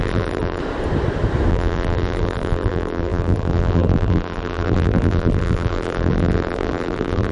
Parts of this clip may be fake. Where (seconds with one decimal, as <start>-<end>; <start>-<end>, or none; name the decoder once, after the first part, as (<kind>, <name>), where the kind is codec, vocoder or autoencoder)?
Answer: 0.0-0.6 (vocoder, BigVGAN v2); 1.5-7.3